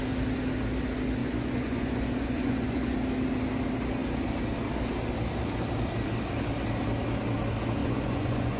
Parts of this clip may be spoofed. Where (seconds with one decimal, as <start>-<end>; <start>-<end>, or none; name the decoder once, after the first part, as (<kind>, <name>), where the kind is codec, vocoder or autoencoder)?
1.2-2.9 (vocoder, Vocos); 7.8-8.6